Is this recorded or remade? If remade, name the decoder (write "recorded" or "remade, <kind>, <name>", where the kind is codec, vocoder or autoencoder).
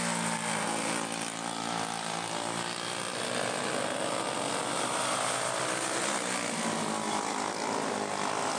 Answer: recorded